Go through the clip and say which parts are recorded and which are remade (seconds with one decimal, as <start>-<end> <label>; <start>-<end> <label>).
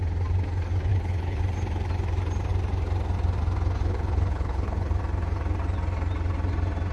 0.0-0.9 recorded; 0.9-1.4 remade; 1.4-3.8 recorded; 3.8-4.9 remade; 4.9-6.9 recorded